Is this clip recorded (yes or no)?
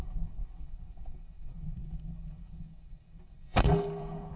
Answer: no